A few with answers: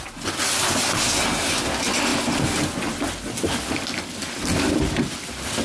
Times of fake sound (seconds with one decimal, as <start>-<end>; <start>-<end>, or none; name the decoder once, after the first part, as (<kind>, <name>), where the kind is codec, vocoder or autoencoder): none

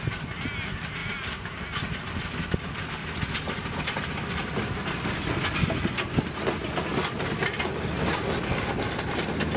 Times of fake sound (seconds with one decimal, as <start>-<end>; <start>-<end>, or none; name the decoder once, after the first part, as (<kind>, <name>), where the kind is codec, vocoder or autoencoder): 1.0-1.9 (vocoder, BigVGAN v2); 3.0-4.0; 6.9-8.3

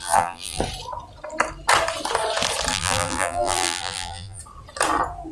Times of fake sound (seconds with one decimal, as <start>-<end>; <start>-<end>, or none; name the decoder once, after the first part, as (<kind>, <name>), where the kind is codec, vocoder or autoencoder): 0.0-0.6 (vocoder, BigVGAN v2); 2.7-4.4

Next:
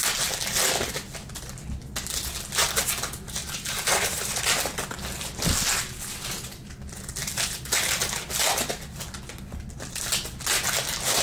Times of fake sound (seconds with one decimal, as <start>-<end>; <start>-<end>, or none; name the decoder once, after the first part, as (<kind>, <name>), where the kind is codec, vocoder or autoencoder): 3.4-4.6 (vocoder, BigVGAN v2)

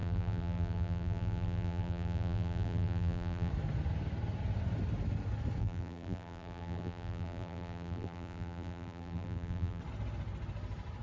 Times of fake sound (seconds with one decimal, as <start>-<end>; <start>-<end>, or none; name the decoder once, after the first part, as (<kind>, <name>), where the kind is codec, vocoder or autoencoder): 0.0-3.5 (vocoder, BigVGAN v2); 5.6-9.8